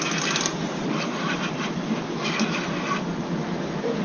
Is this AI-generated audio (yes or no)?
no